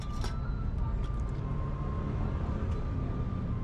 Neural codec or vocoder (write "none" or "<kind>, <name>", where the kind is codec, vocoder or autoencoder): none